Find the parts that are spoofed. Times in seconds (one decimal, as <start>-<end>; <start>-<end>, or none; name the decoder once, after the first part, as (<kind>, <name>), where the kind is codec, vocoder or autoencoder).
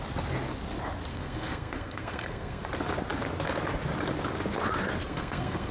1.1-2.6 (codec, SNAC); 5.0-5.7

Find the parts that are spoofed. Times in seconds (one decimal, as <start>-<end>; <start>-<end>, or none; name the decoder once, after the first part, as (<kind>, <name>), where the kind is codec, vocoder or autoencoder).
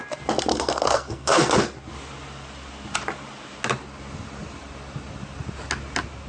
0.5-1.6 (codec, SNAC)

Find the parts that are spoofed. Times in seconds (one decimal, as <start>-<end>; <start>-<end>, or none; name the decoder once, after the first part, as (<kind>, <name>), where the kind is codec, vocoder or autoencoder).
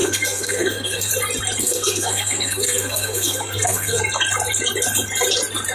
0.0-1.1 (codec, SNAC); 1.6-4.0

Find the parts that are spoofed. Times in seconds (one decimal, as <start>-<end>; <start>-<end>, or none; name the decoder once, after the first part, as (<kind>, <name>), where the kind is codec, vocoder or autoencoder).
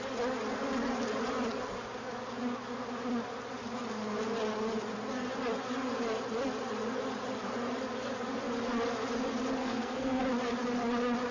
9.6-10.2 (codec, SNAC)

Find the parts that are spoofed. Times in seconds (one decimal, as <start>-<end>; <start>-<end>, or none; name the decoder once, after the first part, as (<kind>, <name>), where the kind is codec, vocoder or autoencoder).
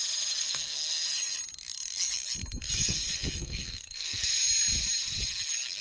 0.4-1.1 (codec, SNAC); 2.4-4.3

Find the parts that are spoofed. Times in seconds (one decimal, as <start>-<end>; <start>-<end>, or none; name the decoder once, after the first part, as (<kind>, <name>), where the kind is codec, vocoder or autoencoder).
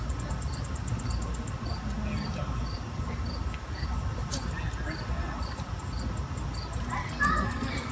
7.0-7.9 (codec, SNAC)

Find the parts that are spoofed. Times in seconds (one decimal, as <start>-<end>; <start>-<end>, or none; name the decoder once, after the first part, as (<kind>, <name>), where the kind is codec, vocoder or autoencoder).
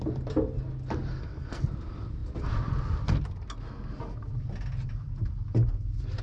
1.1-1.6 (codec, SNAC)